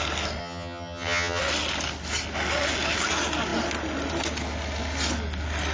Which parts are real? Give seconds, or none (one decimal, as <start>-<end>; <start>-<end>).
0.0-0.4; 1.4-5.7

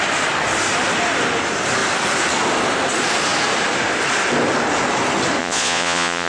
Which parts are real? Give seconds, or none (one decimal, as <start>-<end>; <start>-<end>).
0.0-5.4